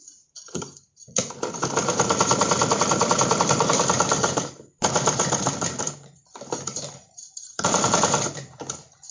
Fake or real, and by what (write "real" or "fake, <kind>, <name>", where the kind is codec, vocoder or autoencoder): fake, vocoder, BigVGAN v2